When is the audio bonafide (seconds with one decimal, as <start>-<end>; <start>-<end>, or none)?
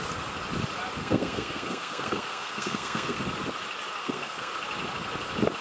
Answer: 0.0-1.0; 3.2-4.0; 4.5-5.6